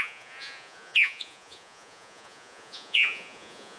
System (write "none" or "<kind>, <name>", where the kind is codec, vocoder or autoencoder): vocoder, Vocos